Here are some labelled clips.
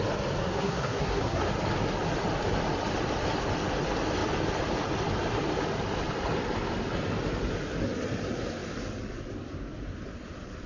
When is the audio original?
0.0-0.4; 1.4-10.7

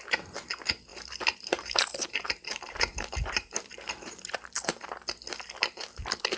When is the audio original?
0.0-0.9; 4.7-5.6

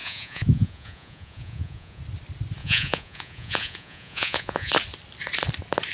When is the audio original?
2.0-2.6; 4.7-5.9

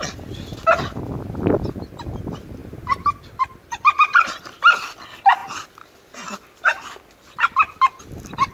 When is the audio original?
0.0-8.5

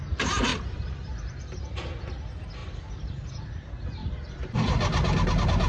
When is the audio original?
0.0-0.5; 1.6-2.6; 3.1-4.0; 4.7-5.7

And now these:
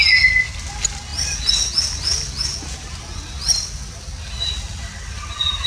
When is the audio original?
0.0-5.7

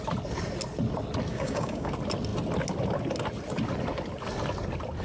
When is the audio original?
0.0-1.3; 1.9-5.0

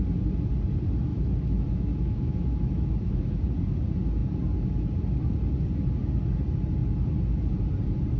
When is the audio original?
0.0-1.1; 3.4-8.2